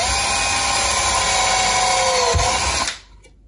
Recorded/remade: recorded